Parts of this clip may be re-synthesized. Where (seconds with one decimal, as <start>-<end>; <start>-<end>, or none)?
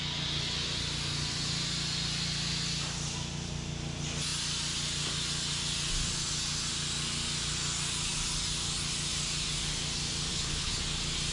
10.3-10.8